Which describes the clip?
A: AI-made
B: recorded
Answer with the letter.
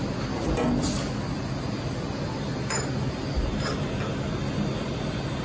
B